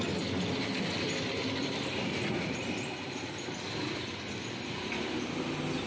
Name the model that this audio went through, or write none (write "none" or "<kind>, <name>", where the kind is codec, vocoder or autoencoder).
none